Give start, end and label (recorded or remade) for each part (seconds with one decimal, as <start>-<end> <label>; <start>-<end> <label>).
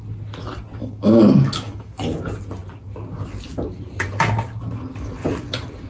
0.0-0.8 recorded; 0.8-2.2 remade; 2.2-5.9 recorded